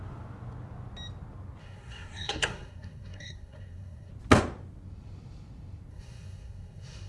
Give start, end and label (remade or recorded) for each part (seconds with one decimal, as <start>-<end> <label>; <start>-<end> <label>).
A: 0.0-1.6 recorded; 1.6-4.1 remade; 4.1-5.9 recorded; 5.9-7.1 remade